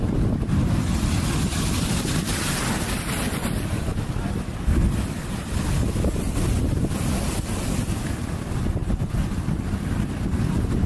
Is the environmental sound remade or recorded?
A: recorded